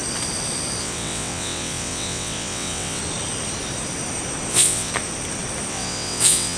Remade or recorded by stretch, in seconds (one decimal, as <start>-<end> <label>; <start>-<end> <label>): 0.0-0.8 recorded; 0.8-3.0 remade; 3.0-4.5 recorded; 4.5-4.9 remade; 4.9-5.7 recorded; 5.7-6.6 remade